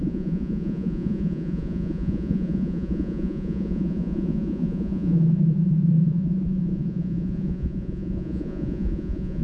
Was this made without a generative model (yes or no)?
no